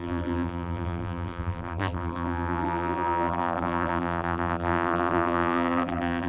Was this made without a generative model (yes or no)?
no